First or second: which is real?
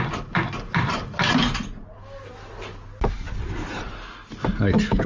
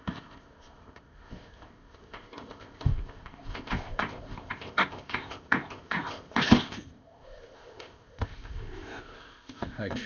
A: first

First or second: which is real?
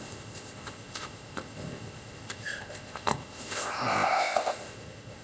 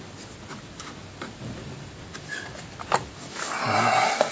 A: second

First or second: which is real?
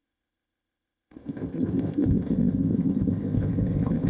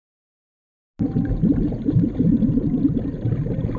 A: second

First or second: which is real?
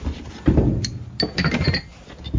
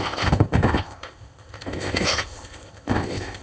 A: first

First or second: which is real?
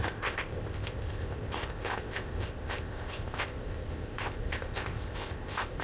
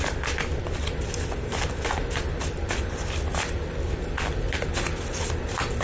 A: second